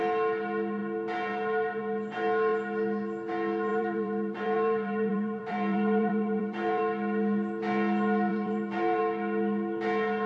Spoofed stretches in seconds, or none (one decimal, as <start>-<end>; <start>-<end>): 3.7-6.8; 8.3-9.0